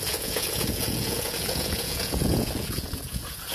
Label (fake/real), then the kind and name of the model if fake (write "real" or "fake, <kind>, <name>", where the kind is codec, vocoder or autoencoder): fake, vocoder, Vocos